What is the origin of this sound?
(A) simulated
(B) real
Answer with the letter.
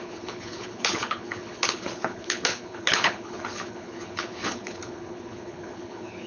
A